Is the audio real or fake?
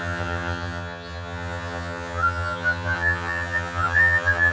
fake